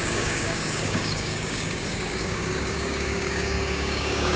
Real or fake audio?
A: fake